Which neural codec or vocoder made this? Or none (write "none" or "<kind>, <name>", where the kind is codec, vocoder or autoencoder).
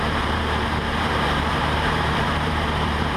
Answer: vocoder, BigVGAN v2